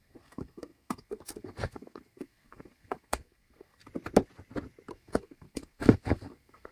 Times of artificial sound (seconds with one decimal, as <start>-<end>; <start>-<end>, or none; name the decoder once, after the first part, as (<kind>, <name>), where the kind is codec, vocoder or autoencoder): 0.0-3.8 (codec, SNAC); 4.9-6.7